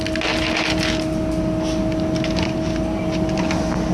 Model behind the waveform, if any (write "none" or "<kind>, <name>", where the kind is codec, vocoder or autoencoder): none